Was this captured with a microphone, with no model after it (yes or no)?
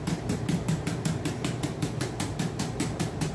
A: yes